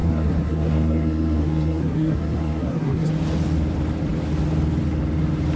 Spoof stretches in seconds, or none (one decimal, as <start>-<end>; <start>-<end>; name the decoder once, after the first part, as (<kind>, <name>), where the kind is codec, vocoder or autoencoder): 0.0-3.1 (codec, SNAC)